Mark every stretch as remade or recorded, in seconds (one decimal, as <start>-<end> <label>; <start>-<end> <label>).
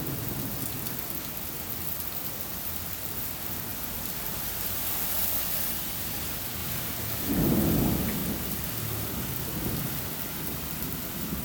0.0-11.4 recorded